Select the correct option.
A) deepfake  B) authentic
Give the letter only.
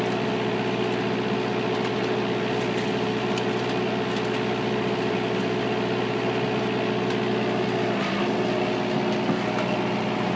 B